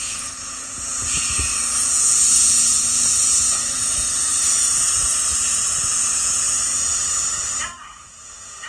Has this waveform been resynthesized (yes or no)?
yes